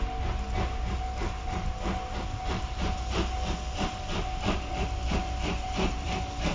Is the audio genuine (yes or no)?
yes